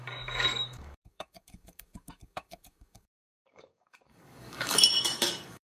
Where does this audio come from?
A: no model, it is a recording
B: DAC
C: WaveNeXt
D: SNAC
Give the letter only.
B